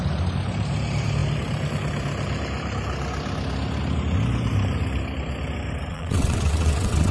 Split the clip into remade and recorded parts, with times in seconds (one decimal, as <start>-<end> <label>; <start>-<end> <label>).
0.0-5.9 recorded; 5.9-7.1 remade